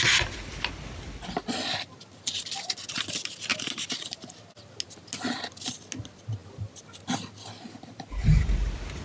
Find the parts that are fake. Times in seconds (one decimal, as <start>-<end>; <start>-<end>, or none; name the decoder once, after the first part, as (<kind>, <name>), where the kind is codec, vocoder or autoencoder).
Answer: none